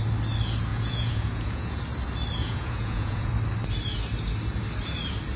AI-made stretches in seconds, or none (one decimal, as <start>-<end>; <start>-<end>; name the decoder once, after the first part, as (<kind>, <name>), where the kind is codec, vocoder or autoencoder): 0.7-1.8 (vocoder, Vocos); 2.4-3.3